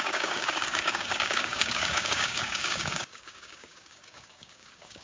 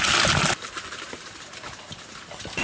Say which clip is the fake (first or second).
first